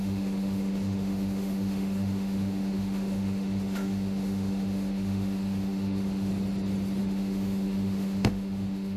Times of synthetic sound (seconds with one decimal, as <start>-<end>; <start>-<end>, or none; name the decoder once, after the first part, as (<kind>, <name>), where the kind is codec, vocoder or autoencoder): 0.0-6.3 (autoencoder, DAC-VAE); 7.0-9.0